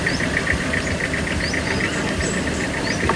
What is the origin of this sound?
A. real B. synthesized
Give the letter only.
A